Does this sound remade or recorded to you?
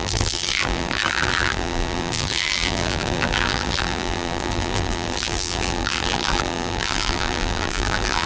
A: remade